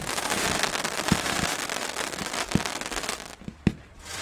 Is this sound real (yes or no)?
no